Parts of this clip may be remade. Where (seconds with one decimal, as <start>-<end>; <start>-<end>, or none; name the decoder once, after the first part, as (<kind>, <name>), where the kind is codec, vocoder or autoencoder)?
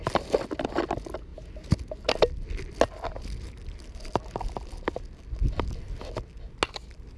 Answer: none